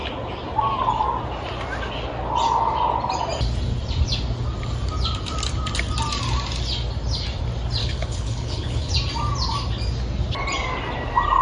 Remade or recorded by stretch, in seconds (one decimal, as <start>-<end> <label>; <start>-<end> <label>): 0.0-7.8 recorded; 7.8-8.9 remade; 8.9-11.4 recorded